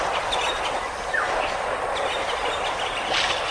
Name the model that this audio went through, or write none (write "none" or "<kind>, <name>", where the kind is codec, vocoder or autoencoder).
none